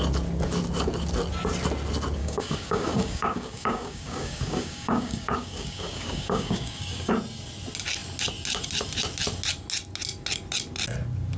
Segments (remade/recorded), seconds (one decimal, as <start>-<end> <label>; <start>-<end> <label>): 0.0-2.2 recorded; 2.2-7.1 remade; 7.1-11.4 recorded